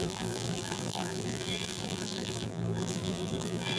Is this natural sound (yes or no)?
no